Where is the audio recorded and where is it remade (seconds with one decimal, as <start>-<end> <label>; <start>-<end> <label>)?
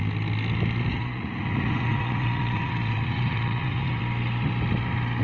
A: 0.0-0.9 recorded; 0.9-4.0 remade; 4.0-5.2 recorded